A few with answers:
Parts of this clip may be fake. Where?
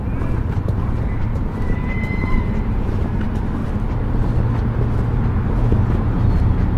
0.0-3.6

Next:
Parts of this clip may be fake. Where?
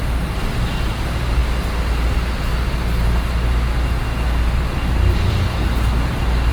none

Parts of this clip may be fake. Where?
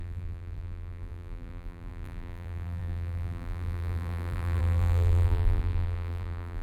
0.0-6.6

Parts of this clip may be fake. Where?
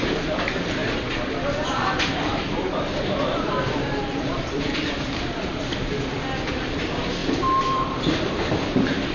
0.0-0.8; 1.3-2.3; 3.2-5.7; 6.5-9.1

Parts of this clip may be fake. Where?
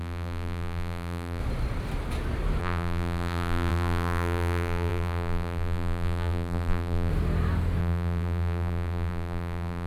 0.0-1.4; 2.6-7.1; 7.8-9.9